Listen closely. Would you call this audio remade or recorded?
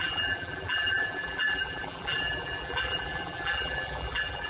remade